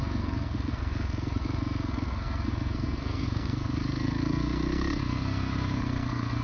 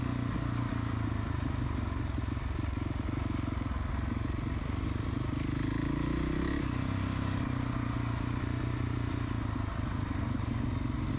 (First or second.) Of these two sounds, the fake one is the first